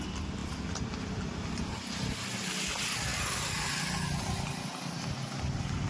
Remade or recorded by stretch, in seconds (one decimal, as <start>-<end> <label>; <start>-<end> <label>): 0.0-0.4 recorded; 0.4-2.3 remade; 2.3-5.9 recorded